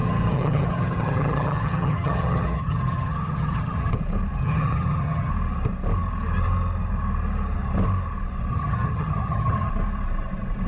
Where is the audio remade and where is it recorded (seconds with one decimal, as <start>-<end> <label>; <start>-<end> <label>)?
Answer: 0.0-3.9 remade; 3.9-4.4 recorded; 4.4-5.3 remade; 5.3-8.5 recorded; 8.5-9.7 remade; 9.7-10.7 recorded